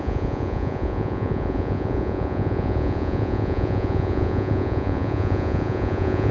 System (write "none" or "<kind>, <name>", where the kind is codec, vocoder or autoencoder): vocoder, Vocos